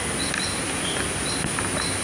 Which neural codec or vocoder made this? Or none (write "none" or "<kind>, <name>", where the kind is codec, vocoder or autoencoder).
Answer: none